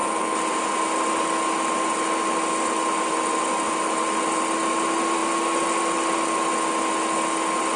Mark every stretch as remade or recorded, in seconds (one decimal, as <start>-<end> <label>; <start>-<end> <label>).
0.0-7.8 recorded